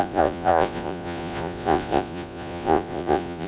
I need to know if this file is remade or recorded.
remade